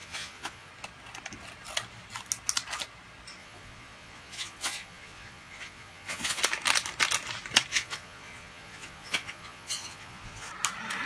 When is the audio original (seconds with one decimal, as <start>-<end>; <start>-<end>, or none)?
0.7-3.4; 6.4-7.7; 10.5-11.1